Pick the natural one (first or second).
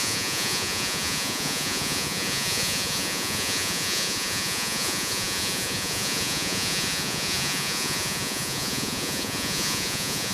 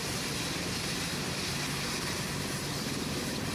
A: second